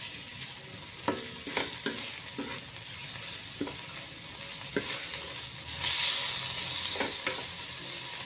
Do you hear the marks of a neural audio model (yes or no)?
no